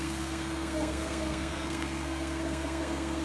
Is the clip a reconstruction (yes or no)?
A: yes